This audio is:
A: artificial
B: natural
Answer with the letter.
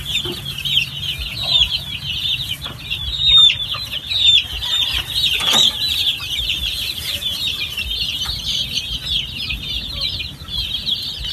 B